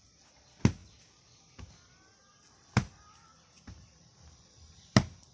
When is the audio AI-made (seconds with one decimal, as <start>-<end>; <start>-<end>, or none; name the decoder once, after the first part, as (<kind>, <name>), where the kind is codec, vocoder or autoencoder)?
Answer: none